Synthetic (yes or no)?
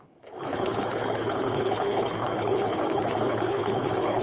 yes